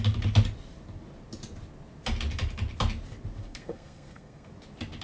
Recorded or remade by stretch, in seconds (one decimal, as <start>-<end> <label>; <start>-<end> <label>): 0.0-3.4 recorded; 3.4-4.5 remade; 4.5-5.0 recorded